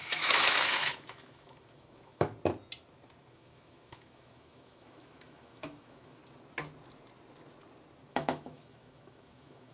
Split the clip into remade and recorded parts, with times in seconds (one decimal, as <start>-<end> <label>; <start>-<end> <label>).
0.0-2.3 remade; 2.3-3.3 recorded; 3.3-6.2 remade; 6.2-8.1 recorded; 8.1-9.7 remade

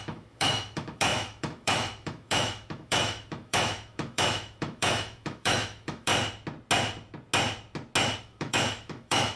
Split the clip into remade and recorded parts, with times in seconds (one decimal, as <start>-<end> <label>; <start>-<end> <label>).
0.0-6.1 remade; 6.1-8.2 recorded; 8.2-9.4 remade

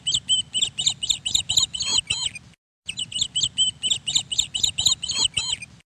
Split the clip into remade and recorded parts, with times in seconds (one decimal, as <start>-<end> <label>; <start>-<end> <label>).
0.0-5.9 recorded

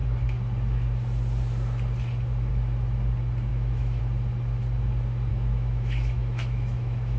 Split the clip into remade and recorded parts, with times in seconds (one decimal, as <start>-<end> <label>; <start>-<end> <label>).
0.0-3.5 recorded; 3.5-4.0 remade; 4.0-5.3 recorded; 5.3-7.2 remade

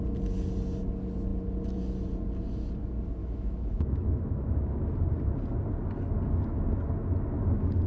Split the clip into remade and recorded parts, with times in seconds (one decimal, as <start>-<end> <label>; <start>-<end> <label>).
0.0-3.2 recorded; 3.2-4.9 remade; 4.9-7.9 recorded

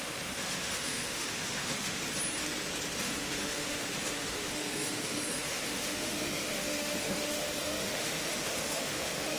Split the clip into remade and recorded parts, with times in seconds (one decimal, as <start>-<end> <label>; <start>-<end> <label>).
0.0-2.0 remade; 2.0-3.0 recorded; 3.0-9.4 remade